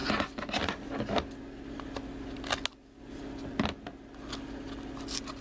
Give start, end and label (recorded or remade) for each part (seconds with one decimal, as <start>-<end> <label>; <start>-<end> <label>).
0.0-5.4 recorded